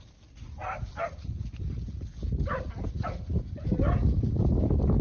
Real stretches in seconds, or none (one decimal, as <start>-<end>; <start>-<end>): 0.0-5.0